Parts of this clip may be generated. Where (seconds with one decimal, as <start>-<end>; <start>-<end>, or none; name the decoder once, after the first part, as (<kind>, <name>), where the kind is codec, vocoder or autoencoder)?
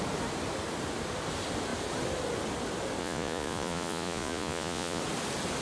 3.0-5.0 (vocoder, Vocos)